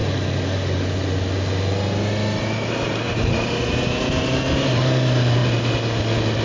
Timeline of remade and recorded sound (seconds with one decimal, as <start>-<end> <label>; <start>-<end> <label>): 0.0-6.4 recorded